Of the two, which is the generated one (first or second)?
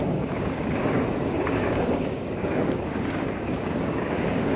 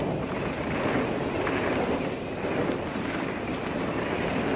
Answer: first